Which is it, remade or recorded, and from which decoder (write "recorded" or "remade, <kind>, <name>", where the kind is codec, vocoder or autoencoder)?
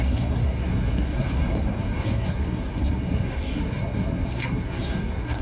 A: remade, codec, SNAC